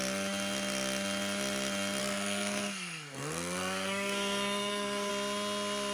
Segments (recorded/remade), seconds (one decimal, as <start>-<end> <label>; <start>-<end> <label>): 0.0-2.0 recorded; 2.0-5.1 remade; 5.1-5.9 recorded